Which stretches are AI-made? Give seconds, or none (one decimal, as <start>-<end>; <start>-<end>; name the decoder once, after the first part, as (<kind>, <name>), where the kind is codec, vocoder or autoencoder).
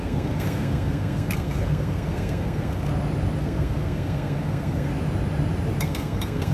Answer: 0.0-2.9 (codec, SNAC); 3.4-4.9; 5.8-6.5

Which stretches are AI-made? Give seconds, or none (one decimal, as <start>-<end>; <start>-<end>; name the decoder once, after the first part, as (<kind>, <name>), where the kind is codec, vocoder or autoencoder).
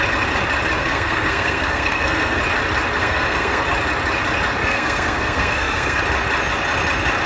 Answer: 0.8-2.4 (codec, SNAC); 3.0-3.6; 4.6-6.0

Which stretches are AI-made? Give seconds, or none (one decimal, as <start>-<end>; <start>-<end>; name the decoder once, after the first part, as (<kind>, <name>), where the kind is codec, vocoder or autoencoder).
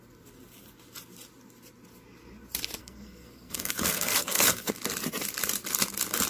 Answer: 2.8-4.7 (codec, SNAC)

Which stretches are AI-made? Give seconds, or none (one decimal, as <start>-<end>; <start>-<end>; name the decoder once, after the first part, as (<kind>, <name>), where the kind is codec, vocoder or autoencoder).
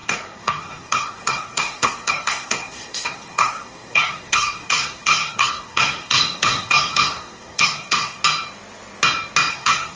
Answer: 0.0-8.2 (codec, SNAC); 9.5-10.0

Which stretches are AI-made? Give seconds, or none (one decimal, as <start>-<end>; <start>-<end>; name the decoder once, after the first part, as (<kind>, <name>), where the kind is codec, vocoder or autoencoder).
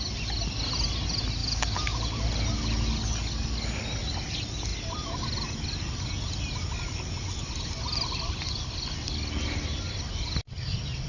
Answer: none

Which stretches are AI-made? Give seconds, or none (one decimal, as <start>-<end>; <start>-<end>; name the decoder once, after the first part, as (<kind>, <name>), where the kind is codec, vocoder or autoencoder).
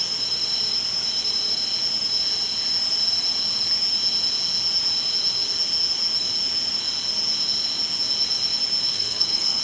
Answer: 8.9-9.6 (codec, SNAC)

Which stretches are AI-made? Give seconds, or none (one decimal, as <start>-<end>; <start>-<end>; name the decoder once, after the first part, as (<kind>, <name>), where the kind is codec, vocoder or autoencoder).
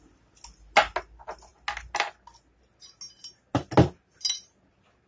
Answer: none